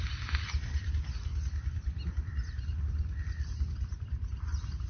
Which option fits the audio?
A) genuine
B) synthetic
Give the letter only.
A